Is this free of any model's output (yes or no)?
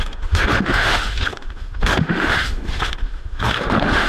no